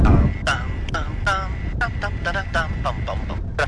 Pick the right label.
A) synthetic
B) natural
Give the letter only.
B